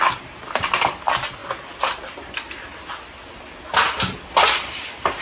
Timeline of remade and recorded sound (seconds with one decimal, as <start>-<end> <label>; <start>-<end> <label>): 0.0-5.2 recorded